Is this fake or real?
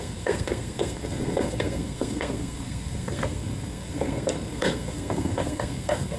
fake